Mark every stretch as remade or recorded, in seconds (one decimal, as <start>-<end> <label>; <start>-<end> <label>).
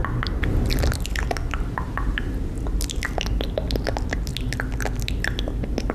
0.0-5.9 recorded